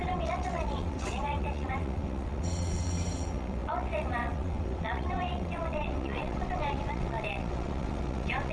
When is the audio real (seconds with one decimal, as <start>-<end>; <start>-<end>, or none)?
none